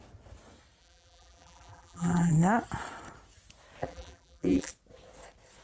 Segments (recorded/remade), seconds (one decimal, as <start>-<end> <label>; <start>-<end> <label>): 0.0-0.8 recorded; 0.8-2.3 remade; 2.3-3.8 recorded; 3.8-4.7 remade; 4.7-5.6 recorded